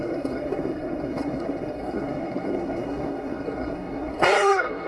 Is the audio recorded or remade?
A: remade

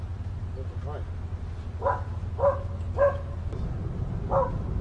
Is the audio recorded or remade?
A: recorded